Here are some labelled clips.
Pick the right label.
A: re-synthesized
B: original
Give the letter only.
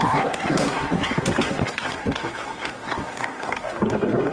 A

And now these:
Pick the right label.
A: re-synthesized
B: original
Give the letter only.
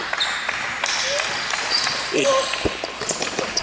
B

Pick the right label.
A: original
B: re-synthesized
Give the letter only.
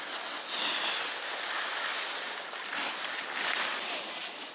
A